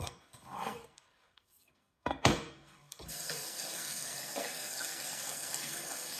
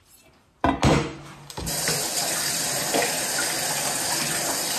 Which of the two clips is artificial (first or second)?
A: first